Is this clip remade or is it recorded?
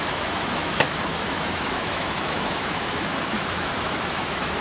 remade